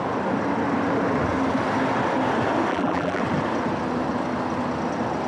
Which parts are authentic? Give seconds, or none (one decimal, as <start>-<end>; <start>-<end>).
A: 0.0-2.7; 3.2-5.3